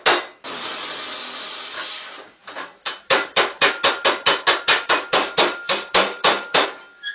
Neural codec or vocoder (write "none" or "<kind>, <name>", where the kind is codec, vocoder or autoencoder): none